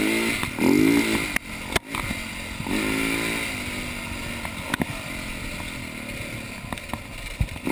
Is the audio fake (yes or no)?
no